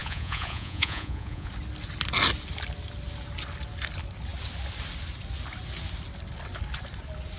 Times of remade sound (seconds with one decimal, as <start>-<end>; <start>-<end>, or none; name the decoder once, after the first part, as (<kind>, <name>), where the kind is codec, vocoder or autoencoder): 0.0-1.5 (vocoder, Vocos)